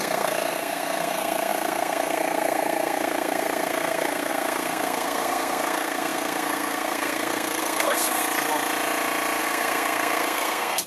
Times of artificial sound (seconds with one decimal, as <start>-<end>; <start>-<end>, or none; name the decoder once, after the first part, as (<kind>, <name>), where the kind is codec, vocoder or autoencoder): 0.0-8.2 (codec, SNAC); 9.4-10.9